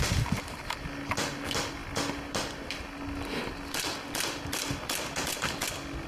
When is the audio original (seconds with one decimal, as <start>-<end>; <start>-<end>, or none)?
0.0-6.1